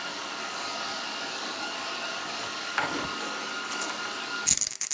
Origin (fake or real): fake